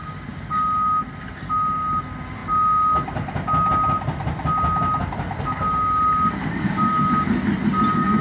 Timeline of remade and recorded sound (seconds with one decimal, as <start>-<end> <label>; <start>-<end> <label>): 0.0-8.2 recorded